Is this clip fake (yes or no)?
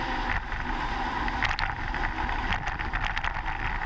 no